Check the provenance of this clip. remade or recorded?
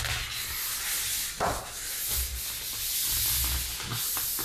recorded